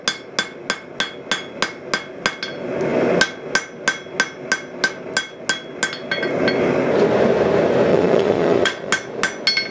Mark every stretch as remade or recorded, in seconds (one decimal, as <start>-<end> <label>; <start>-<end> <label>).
0.0-7.9 recorded; 7.9-8.9 remade; 8.9-9.7 recorded